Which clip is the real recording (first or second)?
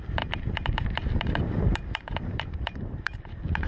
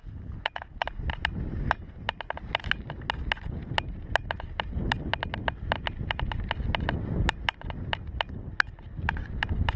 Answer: second